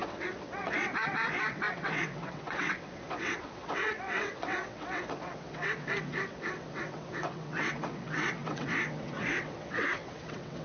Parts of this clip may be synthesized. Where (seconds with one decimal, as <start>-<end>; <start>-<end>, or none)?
0.0-10.6